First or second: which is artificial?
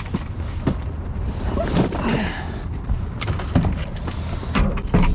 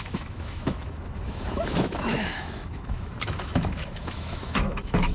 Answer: second